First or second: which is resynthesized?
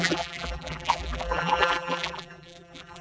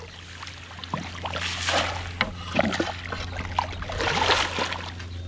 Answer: first